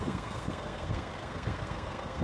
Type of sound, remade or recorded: remade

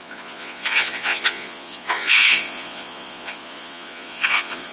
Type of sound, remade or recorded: remade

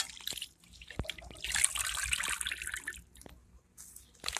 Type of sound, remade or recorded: recorded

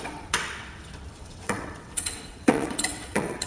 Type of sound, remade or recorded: remade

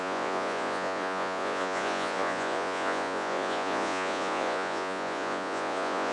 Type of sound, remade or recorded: remade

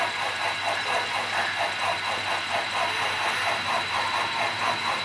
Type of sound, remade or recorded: recorded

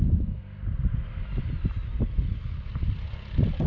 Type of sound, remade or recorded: recorded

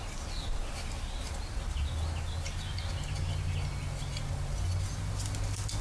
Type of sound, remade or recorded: recorded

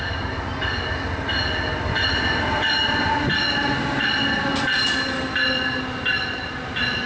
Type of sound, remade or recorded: recorded